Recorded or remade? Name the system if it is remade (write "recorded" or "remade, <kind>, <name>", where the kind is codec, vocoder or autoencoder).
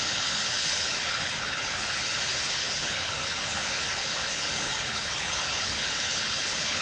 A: remade, codec, HILCodec